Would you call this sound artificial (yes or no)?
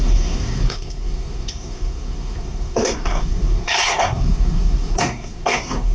yes